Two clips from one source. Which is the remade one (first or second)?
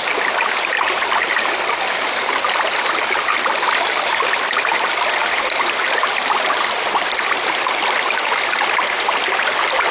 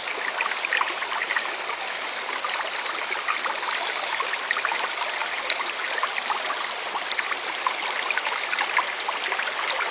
first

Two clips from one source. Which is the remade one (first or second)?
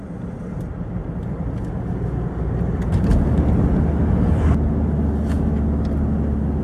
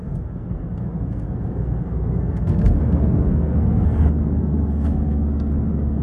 second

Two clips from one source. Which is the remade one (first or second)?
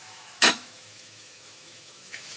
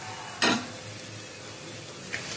first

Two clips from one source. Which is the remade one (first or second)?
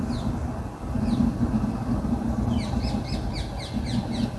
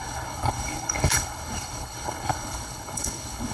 second